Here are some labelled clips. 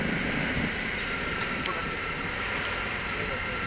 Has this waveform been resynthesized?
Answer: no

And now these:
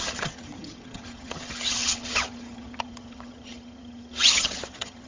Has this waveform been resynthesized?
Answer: yes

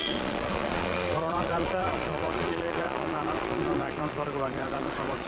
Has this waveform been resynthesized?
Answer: yes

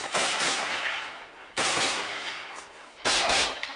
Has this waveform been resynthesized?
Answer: yes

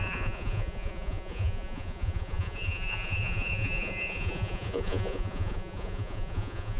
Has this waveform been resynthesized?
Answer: yes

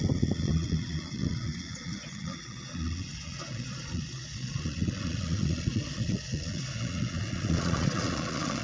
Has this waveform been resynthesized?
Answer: yes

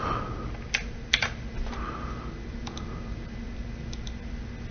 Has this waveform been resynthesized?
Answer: no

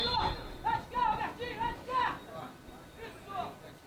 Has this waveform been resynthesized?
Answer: no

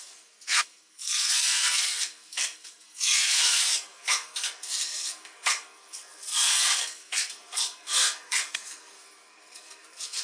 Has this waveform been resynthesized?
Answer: yes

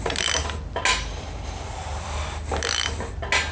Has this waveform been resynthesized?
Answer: no